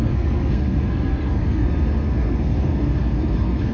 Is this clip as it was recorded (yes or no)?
no